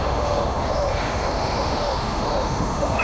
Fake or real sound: fake